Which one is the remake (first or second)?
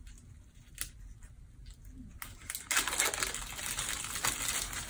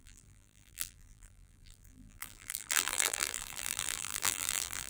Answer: second